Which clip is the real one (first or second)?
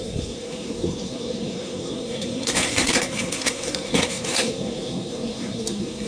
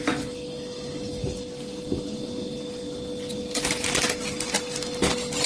second